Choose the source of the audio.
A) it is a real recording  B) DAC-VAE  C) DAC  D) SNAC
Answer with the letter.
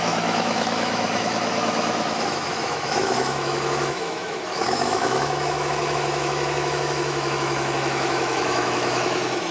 B